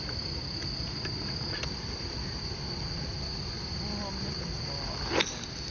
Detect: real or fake real